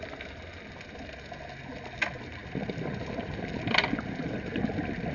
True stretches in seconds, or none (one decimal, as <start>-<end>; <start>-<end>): 0.0-5.1